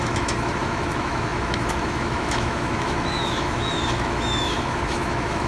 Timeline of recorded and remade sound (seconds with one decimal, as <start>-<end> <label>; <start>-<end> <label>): 0.0-5.5 remade